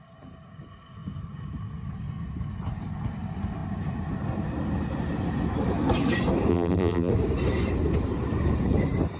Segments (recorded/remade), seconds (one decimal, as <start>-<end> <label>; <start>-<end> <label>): 0.0-6.5 recorded; 6.5-7.1 remade; 7.1-9.2 recorded